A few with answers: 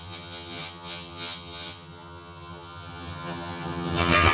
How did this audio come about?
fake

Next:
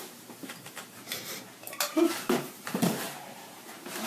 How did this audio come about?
fake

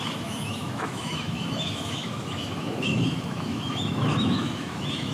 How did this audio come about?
fake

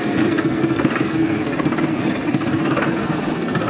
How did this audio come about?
fake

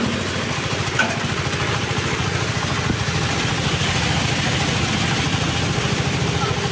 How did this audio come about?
real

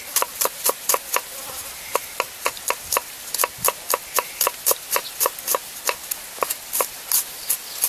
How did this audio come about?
real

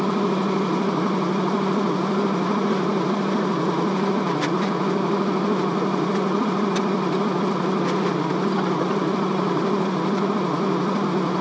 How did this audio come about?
real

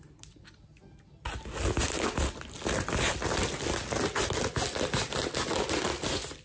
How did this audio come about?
real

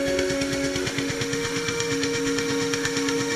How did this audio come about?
fake